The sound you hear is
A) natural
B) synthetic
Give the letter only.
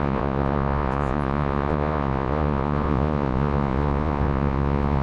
B